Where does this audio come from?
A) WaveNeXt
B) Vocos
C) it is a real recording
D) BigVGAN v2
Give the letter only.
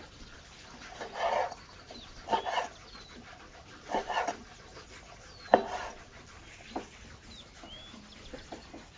C